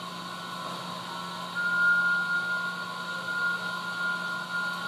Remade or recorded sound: recorded